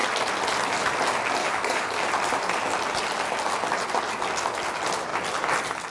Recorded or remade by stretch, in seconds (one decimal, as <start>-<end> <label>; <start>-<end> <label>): 0.0-1.4 recorded; 1.4-2.1 remade; 2.1-5.9 recorded